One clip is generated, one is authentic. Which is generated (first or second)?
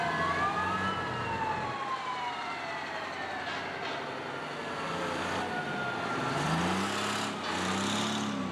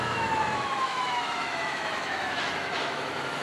second